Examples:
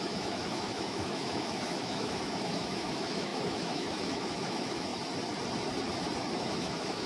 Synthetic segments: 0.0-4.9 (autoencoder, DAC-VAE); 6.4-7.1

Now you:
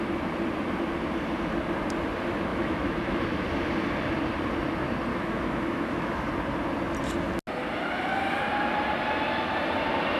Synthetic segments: 2.5-3.2 (autoencoder, DAC-VAE); 5.1-6.3

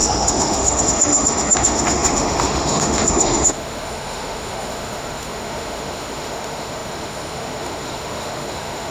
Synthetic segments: 0.0-8.9 (autoencoder, DAC-VAE)

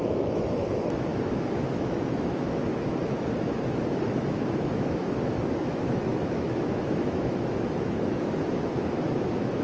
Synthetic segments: 0.0-9.6 (autoencoder, DAC-VAE)

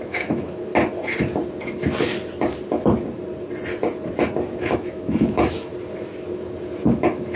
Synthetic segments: 0.0-0.7 (autoencoder, DAC-VAE); 4.6-5.7; 6.9-7.4

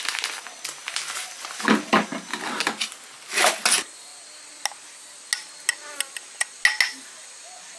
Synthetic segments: none

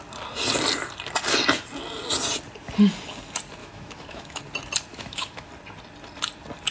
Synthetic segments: 3.6-4.4 (autoencoder, DAC-VAE); 4.9-5.5

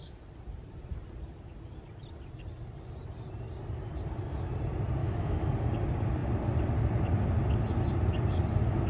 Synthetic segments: 5.0-5.5 (autoencoder, DAC-VAE)